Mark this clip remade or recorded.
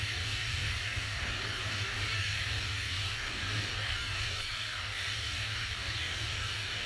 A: remade